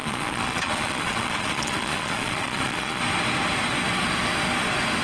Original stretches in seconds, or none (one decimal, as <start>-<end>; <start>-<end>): 3.0-5.0